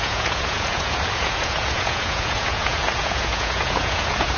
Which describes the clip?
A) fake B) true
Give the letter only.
A